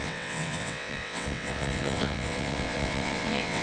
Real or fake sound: fake